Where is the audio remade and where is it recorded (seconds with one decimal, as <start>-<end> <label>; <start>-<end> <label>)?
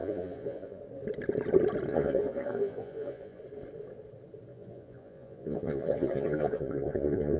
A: 0.0-0.8 remade; 0.8-1.9 recorded; 1.9-3.4 remade; 3.4-4.5 recorded; 4.5-7.4 remade